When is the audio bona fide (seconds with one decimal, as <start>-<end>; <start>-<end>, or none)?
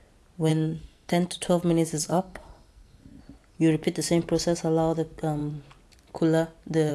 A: 0.0-0.5; 1.1-2.1; 3.2-6.9